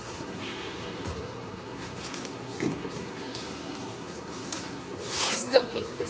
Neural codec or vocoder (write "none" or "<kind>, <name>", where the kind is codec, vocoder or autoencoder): codec, SNAC